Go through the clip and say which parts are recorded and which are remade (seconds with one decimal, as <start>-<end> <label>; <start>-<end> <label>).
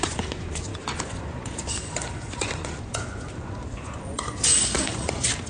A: 0.0-5.5 remade